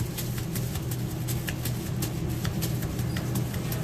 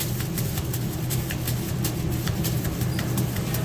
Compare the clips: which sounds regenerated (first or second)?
second